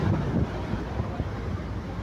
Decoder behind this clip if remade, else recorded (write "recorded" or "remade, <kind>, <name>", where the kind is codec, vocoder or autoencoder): recorded